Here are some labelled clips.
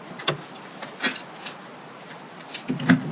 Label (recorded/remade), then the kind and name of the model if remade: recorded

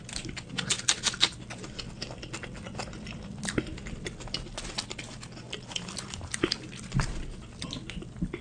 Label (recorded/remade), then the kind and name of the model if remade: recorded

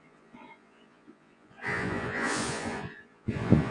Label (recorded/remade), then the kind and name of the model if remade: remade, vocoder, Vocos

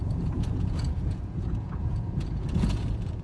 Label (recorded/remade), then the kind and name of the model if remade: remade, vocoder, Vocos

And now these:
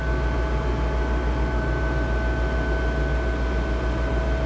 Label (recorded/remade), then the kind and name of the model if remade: recorded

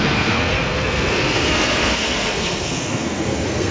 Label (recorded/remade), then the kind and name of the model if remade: remade, codec, SNAC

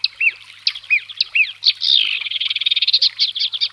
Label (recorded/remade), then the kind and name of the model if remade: recorded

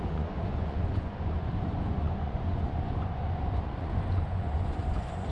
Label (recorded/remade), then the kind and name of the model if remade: remade, vocoder, Vocos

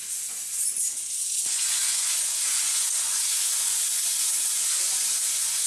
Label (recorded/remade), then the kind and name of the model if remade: remade, vocoder, Vocos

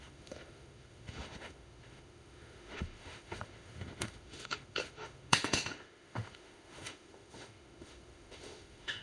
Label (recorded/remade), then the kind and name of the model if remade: remade, autoencoder, DAC-VAE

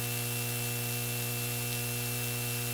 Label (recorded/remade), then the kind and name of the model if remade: recorded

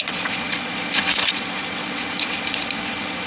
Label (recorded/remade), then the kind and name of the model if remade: remade, vocoder, Vocos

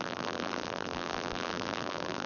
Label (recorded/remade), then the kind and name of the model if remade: remade, vocoder, BigVGAN v2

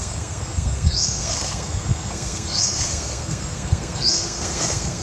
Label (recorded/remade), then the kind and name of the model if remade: remade, codec, SNAC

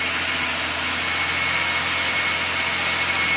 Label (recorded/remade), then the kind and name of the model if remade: recorded